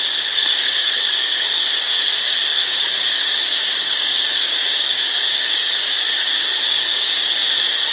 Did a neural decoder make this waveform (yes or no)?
yes